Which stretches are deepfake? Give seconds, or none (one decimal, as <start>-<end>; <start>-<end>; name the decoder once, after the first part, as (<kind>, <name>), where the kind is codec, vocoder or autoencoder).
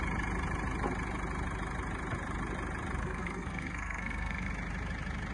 3.0-4.5 (codec, SNAC)